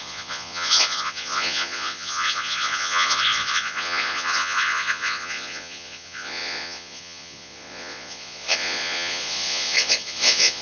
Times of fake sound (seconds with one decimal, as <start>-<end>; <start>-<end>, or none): 0.0-10.6